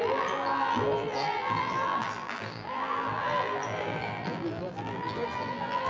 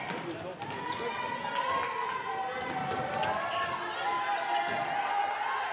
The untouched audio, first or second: second